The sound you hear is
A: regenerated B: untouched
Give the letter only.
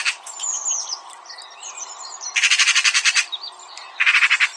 B